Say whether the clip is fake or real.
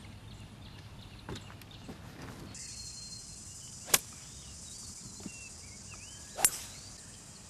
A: real